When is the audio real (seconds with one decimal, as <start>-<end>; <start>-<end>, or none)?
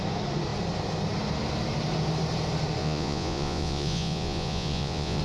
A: 0.0-2.8